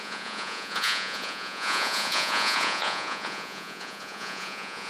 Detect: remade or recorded remade